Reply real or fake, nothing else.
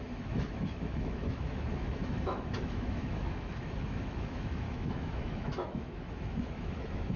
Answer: fake